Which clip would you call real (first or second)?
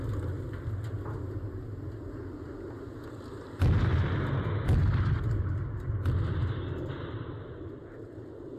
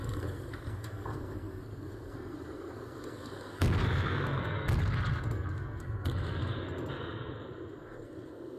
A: first